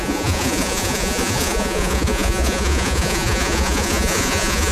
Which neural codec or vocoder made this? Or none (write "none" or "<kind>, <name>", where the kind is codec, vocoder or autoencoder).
vocoder, Vocos